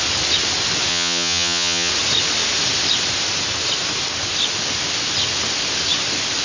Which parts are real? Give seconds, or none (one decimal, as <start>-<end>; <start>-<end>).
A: 0.0-0.9; 1.9-6.4